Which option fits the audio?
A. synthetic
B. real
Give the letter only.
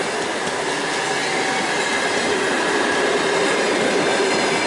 B